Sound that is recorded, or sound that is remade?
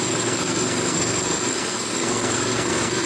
remade